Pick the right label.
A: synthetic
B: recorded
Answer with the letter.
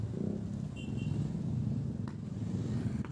B